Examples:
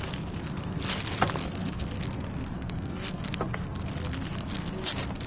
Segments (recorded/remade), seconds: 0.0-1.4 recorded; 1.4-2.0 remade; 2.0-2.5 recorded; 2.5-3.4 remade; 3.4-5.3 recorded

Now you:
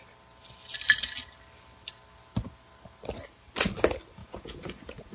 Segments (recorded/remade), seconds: 0.0-4.2 recorded; 4.2-5.1 remade

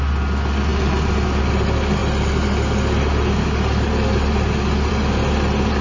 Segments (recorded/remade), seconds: 0.0-5.8 recorded

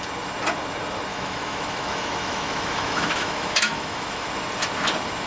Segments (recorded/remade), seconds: 0.0-1.1 recorded; 1.1-4.3 remade; 4.3-5.3 recorded

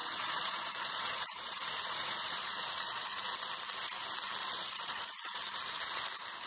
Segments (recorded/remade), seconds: 0.0-3.2 remade; 3.2-4.4 recorded; 4.4-5.4 remade; 5.4-6.5 recorded

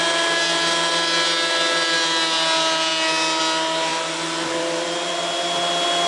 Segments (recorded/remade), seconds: 0.0-3.9 recorded; 3.9-5.1 remade; 5.1-6.1 recorded

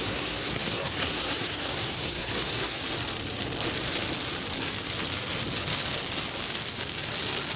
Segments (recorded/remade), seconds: 0.0-2.8 remade; 2.8-7.6 recorded